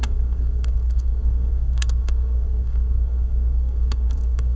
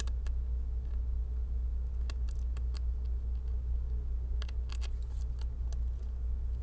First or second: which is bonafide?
second